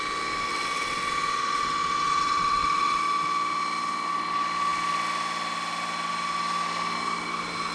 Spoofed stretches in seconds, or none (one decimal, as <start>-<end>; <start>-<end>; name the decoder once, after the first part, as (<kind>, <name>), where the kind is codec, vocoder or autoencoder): 0.5-3.0 (vocoder, WaveNeXt)